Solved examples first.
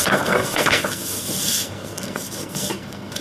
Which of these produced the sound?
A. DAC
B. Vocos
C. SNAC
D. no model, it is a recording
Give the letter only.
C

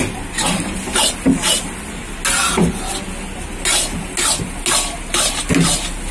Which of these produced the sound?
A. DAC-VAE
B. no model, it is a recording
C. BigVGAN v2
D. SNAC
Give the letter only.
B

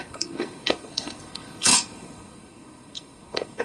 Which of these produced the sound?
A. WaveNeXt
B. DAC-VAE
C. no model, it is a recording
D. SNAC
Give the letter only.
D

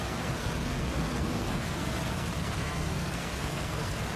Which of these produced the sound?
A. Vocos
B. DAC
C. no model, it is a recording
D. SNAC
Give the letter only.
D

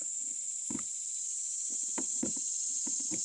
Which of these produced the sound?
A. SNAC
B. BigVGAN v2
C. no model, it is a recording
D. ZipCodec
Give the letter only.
C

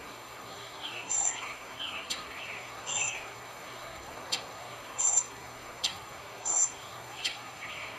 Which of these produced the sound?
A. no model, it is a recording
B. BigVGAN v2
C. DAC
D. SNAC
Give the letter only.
D